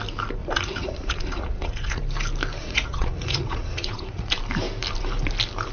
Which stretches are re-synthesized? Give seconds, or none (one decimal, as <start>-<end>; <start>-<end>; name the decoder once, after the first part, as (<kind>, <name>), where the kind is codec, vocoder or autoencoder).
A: 0.4-2.0 (vocoder, Vocos); 2.6-4.3

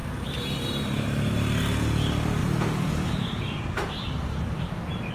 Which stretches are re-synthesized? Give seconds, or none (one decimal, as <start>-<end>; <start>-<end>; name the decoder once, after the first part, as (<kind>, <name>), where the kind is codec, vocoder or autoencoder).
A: 0.0-0.9 (vocoder, BigVGAN v2); 2.4-5.1